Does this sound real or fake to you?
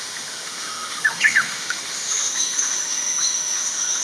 fake